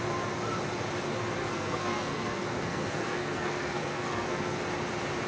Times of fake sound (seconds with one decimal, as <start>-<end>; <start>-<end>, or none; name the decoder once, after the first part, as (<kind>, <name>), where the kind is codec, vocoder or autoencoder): 1.4-4.6 (codec, SNAC)